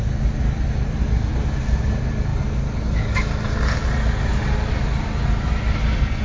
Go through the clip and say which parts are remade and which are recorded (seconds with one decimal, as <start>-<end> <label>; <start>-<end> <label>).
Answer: 0.0-6.2 recorded